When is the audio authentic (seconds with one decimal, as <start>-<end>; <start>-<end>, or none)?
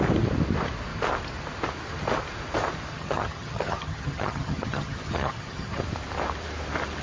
0.0-2.9; 5.8-7.0